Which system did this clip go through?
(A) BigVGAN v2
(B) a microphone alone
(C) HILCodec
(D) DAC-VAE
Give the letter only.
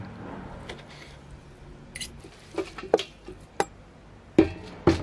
B